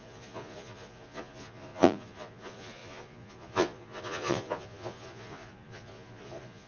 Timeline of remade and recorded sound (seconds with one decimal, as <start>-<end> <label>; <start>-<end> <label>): 0.0-6.7 remade